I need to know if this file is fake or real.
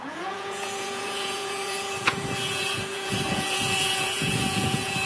fake